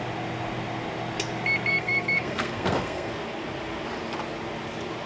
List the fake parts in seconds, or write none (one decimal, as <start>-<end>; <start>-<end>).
1.7-3.1